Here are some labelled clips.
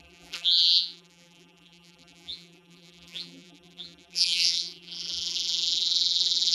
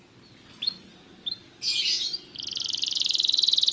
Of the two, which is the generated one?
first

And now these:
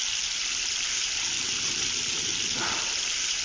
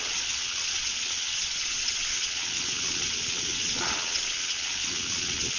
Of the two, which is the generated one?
second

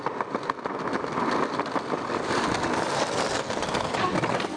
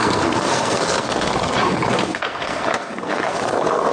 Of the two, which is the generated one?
second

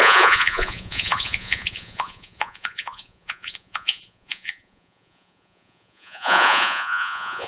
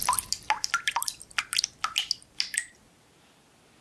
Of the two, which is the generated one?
first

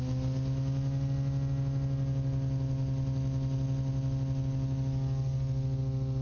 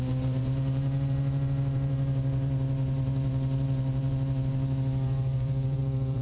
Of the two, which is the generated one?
second